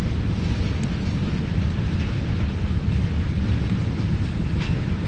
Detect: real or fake real